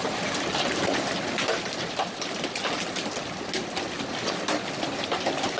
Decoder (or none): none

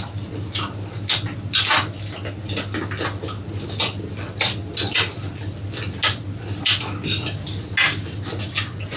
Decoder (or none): none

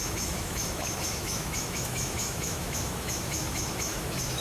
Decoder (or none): autoencoder, DAC-VAE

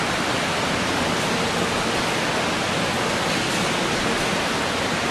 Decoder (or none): none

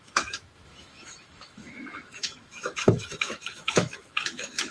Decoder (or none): autoencoder, DAC-VAE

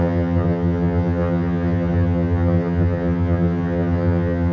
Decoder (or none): vocoder, HiFi-GAN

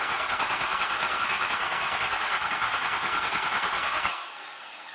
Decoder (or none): codec, SNAC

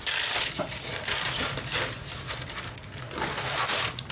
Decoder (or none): none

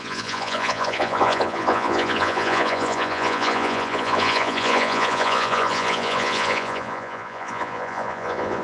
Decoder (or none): vocoder, Vocos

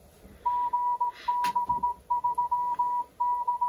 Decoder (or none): none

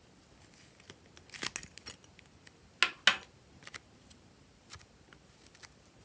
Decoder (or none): none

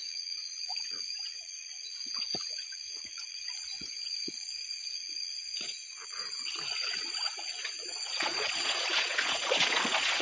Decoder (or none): vocoder, Vocos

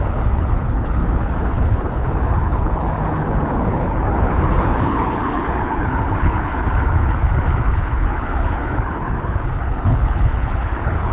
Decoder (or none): codec, HILCodec